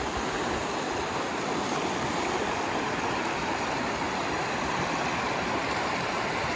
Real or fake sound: fake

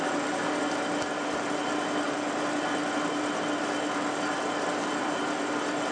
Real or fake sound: real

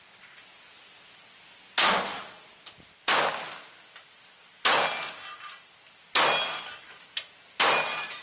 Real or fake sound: real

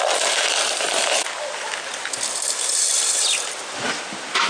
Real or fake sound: real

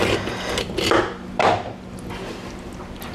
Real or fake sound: real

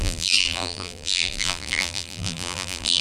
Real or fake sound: fake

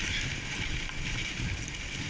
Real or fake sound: real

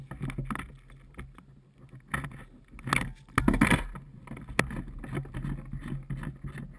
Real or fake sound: real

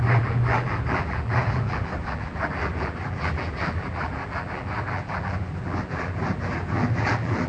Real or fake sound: fake